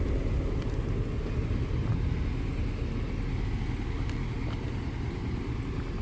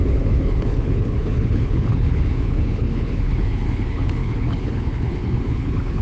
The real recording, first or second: first